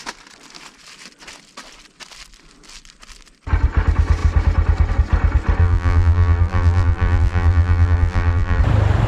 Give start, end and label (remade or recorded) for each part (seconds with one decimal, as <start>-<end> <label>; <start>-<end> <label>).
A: 0.0-5.6 recorded; 5.6-8.6 remade; 8.6-9.1 recorded